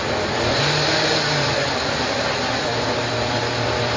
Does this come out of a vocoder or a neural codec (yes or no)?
no